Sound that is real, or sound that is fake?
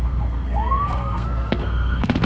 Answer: fake